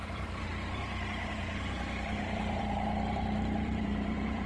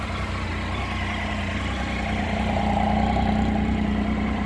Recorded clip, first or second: second